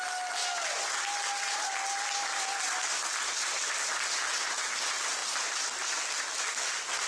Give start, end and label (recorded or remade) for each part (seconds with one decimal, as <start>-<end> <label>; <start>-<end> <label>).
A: 0.0-7.1 recorded